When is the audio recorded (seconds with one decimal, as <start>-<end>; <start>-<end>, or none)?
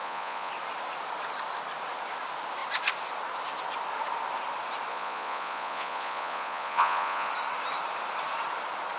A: 0.5-4.9; 7.3-9.0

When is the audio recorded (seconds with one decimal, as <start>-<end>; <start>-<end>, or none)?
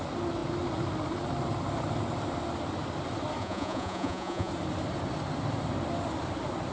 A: 0.0-3.4; 4.5-6.7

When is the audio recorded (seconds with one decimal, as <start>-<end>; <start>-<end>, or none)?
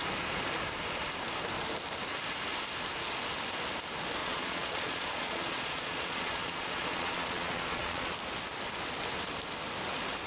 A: 0.0-4.2; 8.1-10.3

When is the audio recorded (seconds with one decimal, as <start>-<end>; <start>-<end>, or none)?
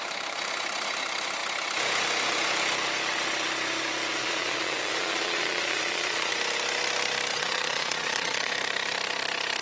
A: 0.0-4.2; 6.3-7.3; 8.5-9.6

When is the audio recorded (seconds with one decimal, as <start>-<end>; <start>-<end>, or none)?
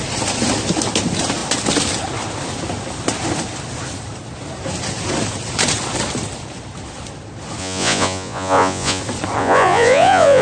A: 0.0-7.6; 9.0-9.4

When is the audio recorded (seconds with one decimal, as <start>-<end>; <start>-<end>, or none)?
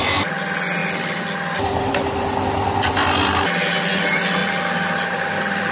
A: 0.0-5.7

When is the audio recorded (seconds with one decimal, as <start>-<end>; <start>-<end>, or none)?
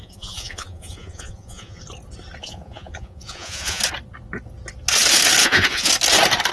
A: 1.8-2.4; 3.8-5.4; 5.9-6.5